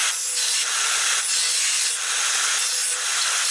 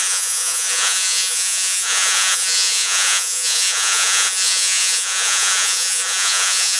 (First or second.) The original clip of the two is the first